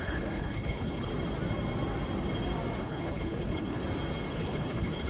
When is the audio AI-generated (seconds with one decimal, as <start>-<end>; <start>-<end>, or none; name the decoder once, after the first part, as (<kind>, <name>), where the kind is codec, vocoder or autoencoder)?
0.0-1.1 (codec, HILCodec); 2.8-3.8; 4.3-5.1